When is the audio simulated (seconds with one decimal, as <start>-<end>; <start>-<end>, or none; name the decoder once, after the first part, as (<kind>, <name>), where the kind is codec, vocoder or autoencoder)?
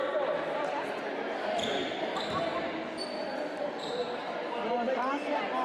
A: none